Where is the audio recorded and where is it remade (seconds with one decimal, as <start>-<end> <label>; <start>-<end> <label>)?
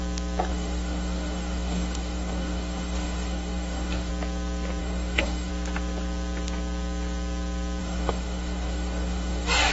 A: 0.0-0.5 recorded; 0.5-4.1 remade; 4.1-4.8 recorded; 4.8-5.5 remade; 5.5-7.8 recorded; 7.8-9.7 remade